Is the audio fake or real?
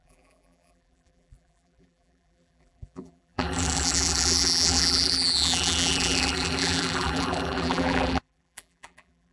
fake